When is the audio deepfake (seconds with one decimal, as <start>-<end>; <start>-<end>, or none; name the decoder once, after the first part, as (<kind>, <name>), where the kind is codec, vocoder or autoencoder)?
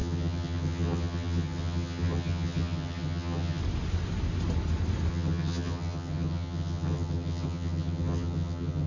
0.0-3.6 (vocoder, HiFi-GAN); 5.1-8.9